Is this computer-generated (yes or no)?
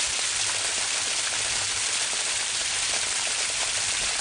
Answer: no